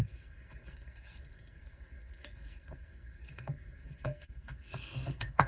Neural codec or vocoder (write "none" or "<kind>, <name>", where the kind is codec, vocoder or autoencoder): codec, SNAC